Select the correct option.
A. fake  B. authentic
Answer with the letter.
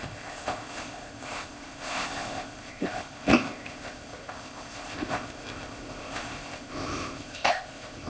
A